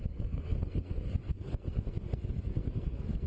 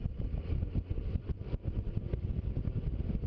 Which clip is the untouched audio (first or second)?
second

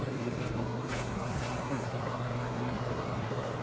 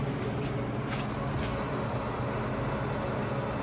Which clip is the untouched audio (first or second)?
second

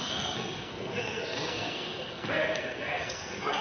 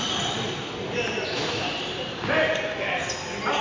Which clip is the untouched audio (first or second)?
second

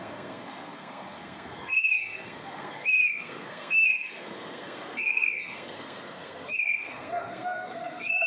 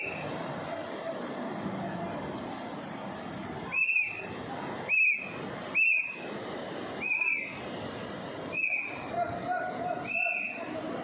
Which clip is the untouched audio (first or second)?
second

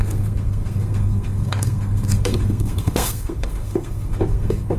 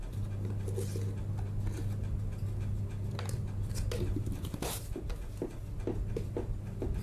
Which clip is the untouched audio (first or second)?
second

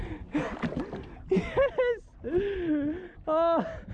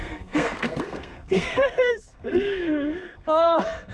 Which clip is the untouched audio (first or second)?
first